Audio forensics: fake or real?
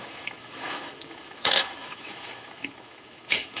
fake